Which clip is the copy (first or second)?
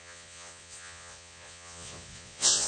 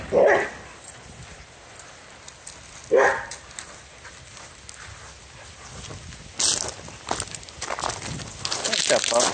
first